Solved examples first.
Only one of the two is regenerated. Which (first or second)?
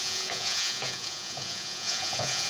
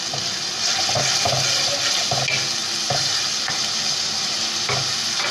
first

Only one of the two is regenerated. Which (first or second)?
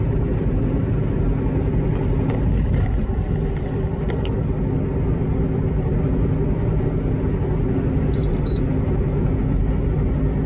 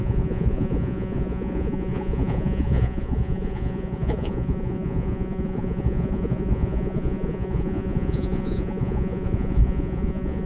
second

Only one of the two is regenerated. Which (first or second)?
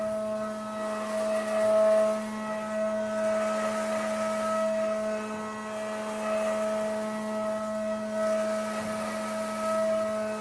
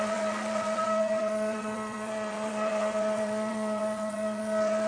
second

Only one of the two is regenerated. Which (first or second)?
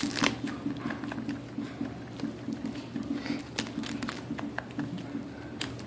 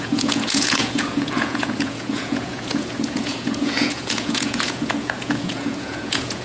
second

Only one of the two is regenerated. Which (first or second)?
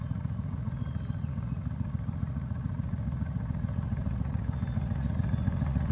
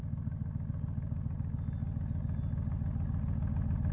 first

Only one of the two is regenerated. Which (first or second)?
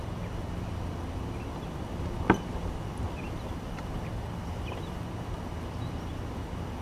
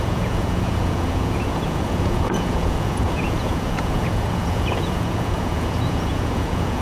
second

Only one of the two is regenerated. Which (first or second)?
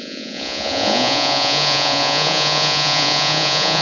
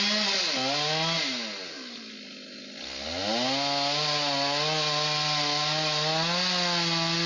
first